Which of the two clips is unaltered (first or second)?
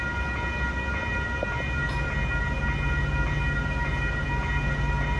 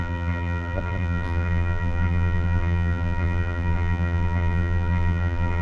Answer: first